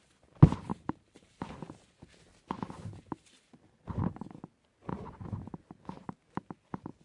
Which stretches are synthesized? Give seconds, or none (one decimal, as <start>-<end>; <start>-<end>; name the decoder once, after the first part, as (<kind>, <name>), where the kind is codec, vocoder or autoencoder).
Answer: 0.7-1.4 (vocoder, BigVGAN v2)